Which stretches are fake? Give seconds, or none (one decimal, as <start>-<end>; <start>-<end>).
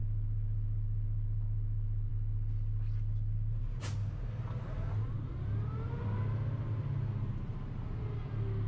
none